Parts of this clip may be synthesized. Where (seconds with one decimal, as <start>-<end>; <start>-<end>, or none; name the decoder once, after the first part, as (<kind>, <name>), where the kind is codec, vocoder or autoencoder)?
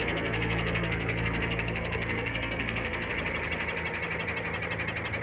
0.0-3.1 (codec, SNAC)